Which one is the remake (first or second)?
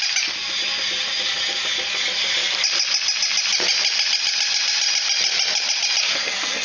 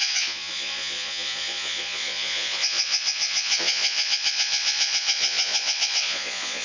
second